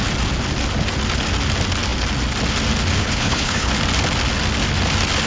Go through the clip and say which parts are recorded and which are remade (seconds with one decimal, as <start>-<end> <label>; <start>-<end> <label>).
0.0-3.0 recorded; 3.0-3.7 remade; 3.7-5.3 recorded